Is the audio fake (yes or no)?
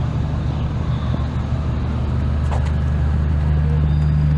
no